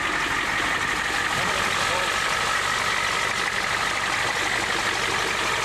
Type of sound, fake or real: real